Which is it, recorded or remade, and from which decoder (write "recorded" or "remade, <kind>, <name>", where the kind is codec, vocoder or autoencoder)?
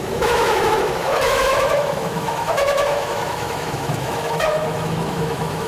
remade, autoencoder, DAC-VAE